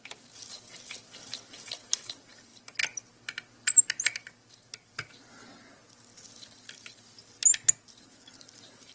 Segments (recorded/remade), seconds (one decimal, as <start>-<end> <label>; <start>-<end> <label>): 0.0-8.9 recorded